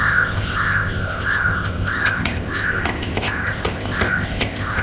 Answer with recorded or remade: remade